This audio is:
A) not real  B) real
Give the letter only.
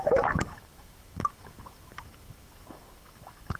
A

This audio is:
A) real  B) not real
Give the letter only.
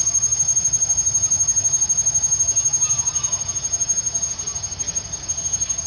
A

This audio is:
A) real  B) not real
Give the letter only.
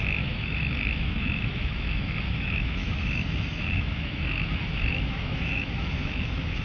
B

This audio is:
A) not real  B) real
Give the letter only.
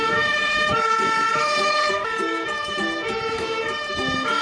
A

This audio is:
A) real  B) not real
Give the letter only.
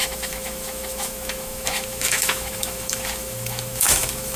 B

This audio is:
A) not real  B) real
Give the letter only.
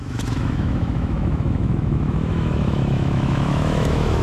A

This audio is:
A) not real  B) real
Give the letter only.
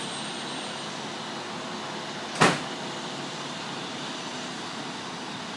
B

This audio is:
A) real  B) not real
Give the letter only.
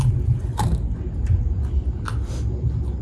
A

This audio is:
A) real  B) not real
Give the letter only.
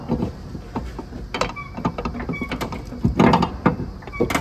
A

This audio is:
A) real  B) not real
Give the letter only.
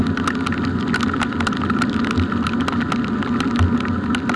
A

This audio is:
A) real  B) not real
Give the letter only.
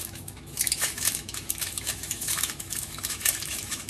B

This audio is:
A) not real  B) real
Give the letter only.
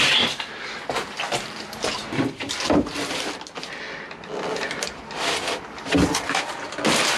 B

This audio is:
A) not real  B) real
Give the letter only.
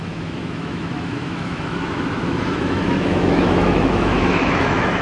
A